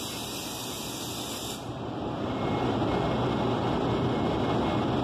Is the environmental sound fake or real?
real